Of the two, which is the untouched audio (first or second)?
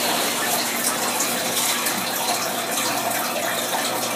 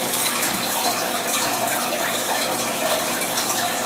first